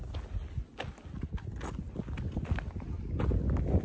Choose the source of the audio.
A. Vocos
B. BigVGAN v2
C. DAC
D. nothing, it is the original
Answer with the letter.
D